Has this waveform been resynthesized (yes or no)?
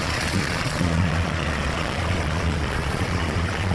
yes